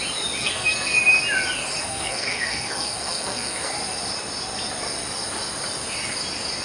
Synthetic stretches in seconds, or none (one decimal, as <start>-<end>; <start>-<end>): 0.4-1.0; 1.8-3.7